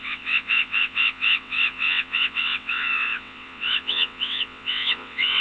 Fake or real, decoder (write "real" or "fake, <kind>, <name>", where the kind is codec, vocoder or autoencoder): fake, vocoder, WaveNeXt